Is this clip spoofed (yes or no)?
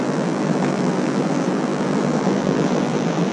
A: yes